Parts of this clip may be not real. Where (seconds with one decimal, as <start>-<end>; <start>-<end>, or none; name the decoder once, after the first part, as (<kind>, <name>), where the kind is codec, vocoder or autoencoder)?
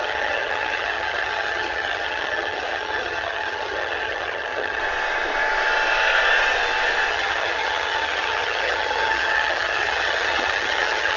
0.0-4.8 (vocoder, HiFi-GAN); 7.1-11.2